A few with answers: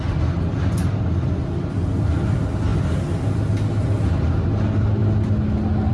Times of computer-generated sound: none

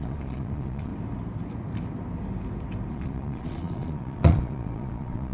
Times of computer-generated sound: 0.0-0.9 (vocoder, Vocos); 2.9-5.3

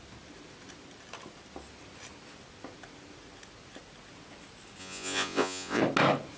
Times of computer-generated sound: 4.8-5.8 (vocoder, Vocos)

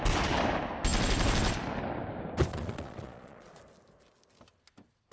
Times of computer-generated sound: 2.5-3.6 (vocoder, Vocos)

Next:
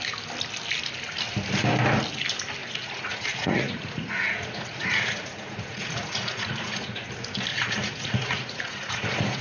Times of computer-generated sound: 2.6-7.1 (vocoder, Vocos); 7.5-9.4

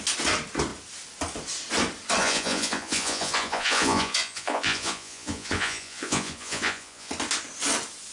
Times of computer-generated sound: 2.2-7.1 (vocoder, Vocos)

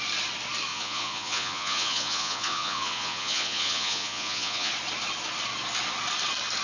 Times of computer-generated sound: 0.7-4.7 (vocoder, Vocos)

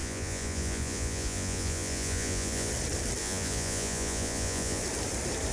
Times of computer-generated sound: 0.0-2.7 (vocoder, Vocos); 3.2-4.8